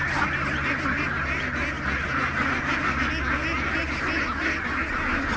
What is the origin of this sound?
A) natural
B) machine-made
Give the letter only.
A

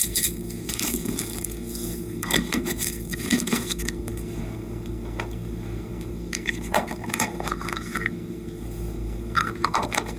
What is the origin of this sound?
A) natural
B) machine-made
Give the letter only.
B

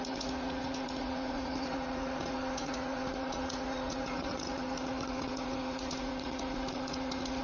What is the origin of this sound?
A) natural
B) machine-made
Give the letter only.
B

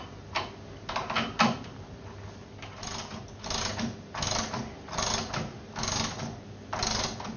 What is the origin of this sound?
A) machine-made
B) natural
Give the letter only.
B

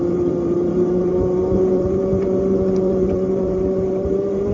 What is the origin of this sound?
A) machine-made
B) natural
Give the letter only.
A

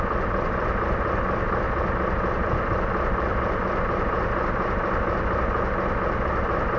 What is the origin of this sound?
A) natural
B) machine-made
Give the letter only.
A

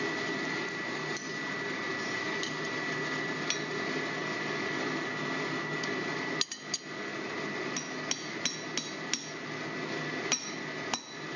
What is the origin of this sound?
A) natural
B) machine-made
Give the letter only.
A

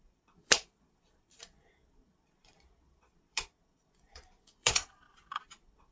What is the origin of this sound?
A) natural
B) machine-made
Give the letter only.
B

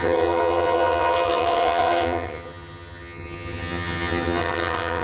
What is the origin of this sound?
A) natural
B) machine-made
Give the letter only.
B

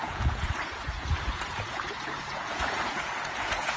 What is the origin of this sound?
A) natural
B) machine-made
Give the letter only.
B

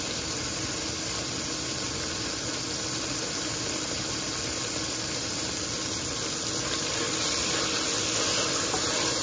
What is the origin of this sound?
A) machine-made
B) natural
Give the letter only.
B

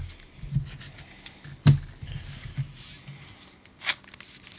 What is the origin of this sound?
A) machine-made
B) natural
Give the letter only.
B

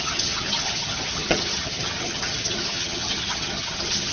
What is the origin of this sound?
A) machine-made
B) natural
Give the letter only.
A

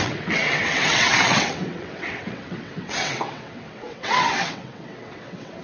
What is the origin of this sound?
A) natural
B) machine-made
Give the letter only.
B